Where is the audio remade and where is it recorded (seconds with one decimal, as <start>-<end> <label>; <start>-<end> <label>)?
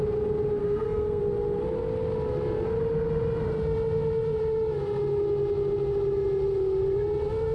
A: 0.0-0.6 recorded; 0.6-1.2 remade; 1.2-7.5 recorded